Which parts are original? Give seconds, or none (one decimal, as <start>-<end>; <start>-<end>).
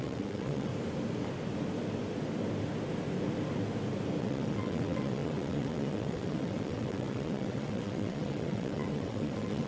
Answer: 0.7-4.2